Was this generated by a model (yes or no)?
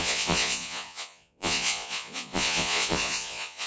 yes